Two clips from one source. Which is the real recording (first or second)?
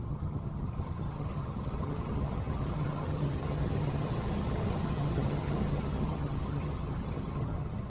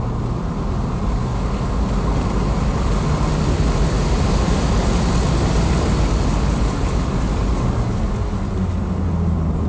second